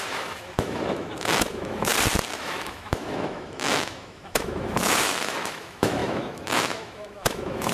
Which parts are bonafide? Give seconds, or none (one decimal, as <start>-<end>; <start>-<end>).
1.9-2.4